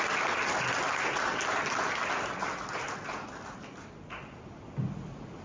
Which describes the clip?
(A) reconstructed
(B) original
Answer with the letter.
B